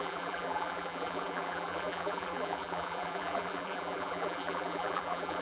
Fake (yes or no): yes